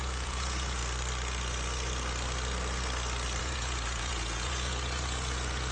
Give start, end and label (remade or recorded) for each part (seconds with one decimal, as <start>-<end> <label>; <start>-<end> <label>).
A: 0.0-0.8 remade; 0.8-3.4 recorded; 3.4-5.7 remade